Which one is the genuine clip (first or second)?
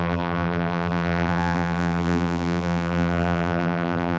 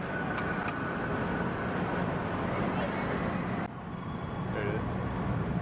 second